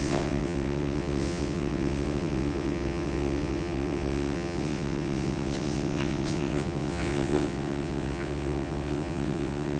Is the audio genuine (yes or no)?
no